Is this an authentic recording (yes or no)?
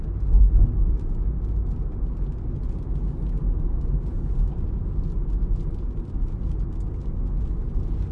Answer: yes